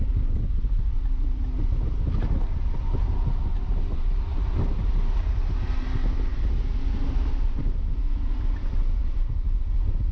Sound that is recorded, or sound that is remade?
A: recorded